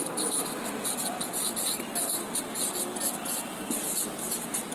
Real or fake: real